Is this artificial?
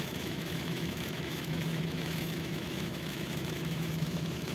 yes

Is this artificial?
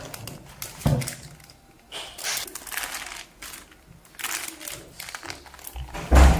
no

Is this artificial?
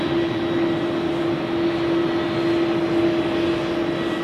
no